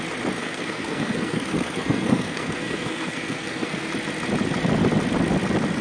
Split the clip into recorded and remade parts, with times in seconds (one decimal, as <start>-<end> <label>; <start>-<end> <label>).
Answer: 0.0-0.4 recorded; 0.4-3.9 remade; 3.9-5.8 recorded